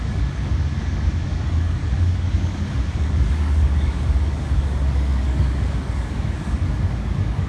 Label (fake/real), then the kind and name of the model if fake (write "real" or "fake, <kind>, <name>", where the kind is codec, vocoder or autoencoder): fake, codec, DAC